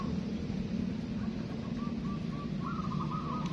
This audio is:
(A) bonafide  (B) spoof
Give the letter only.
A